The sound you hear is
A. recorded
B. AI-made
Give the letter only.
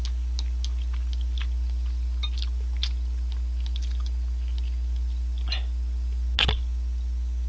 A